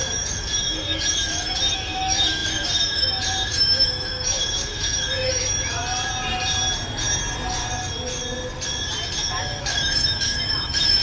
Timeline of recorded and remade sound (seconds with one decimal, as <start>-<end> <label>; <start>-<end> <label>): 0.0-5.8 remade; 5.8-9.6 recorded; 9.6-11.0 remade